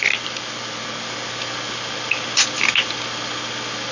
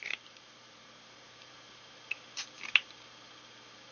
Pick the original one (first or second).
first